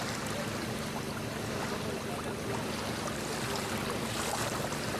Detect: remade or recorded recorded